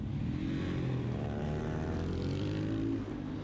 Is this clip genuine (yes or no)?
yes